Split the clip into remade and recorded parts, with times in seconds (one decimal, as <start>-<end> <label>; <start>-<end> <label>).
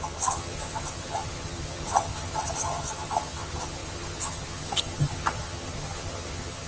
0.0-6.7 remade